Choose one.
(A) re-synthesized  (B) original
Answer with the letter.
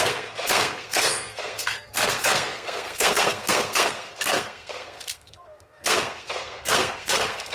A